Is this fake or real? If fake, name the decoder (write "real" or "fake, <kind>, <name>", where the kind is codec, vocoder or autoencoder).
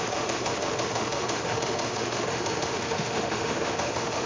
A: fake, autoencoder, DAC-VAE